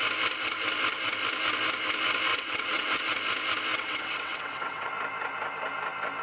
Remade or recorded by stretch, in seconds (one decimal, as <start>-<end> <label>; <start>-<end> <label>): 0.0-2.3 recorded; 2.3-3.0 remade; 3.0-3.7 recorded; 3.7-4.9 remade; 4.9-6.2 recorded